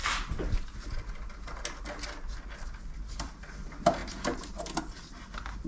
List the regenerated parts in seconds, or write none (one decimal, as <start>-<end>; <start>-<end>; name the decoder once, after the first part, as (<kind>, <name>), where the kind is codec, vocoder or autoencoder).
none